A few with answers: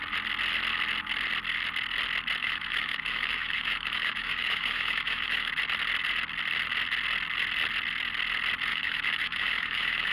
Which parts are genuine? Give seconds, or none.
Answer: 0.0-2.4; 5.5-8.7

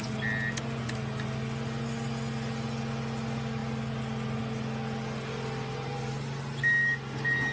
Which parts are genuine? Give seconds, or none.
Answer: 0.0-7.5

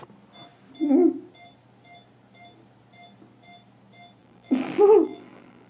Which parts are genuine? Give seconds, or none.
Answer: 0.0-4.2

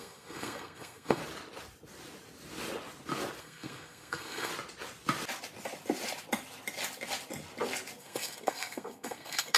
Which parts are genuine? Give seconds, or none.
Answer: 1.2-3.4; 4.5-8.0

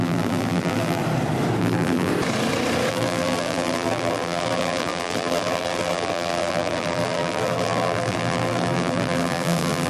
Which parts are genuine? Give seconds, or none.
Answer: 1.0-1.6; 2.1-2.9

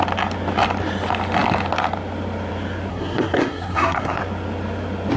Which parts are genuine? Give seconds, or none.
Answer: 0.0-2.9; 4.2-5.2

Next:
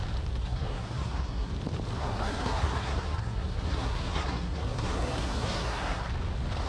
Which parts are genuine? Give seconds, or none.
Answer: 0.0-0.4; 1.5-2.0; 6.0-6.7

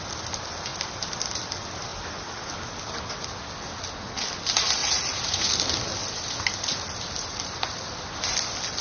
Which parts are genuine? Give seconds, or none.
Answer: 0.0-4.8; 5.5-8.8